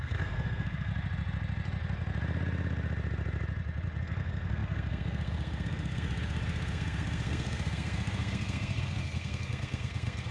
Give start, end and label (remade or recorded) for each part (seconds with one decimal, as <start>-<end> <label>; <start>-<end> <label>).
0.0-0.9 remade; 0.9-4.0 recorded; 4.0-10.3 remade